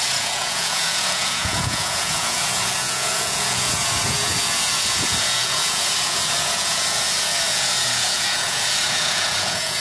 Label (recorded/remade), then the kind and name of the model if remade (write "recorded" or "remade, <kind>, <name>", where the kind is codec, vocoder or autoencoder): remade, vocoder, Vocos